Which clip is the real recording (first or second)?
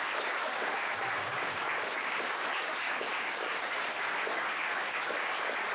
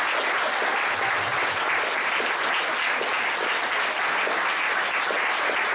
second